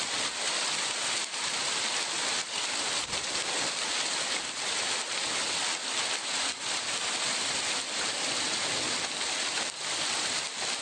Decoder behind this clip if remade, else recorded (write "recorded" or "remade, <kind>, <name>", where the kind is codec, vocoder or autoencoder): recorded